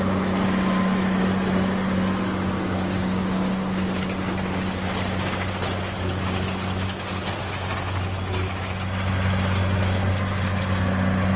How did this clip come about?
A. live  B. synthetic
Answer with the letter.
A